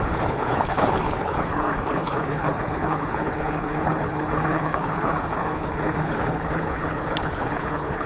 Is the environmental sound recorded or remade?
remade